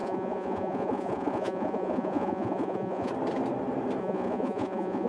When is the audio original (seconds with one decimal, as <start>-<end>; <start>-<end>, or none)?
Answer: 3.1-4.0

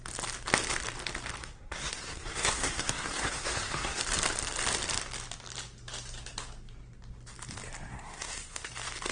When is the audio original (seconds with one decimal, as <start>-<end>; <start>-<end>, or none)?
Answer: 0.0-1.4; 4.0-7.9; 8.7-9.1

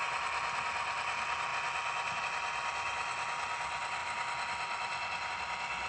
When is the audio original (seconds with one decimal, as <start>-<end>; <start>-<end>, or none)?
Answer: 0.0-5.9

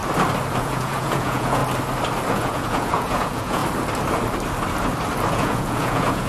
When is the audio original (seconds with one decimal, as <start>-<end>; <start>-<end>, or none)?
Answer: 0.0-0.6; 1.6-2.3; 3.6-5.3

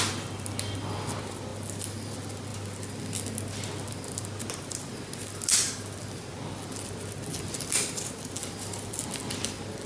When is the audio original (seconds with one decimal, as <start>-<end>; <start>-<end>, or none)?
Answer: 0.0-9.9

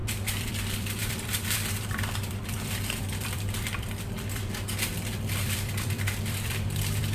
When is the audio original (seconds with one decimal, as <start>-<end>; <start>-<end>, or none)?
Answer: none

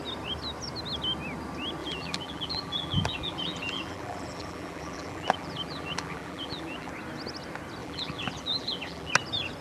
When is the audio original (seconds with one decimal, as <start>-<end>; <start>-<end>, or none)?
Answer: 0.0-1.8; 6.9-7.8; 9.1-9.6

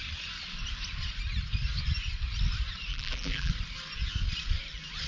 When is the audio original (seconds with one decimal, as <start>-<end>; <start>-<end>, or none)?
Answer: 0.0-2.9; 3.5-5.1